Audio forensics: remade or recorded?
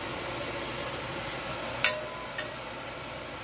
recorded